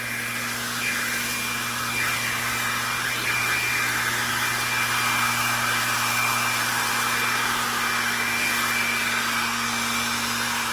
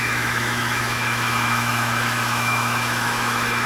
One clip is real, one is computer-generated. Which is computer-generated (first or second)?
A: second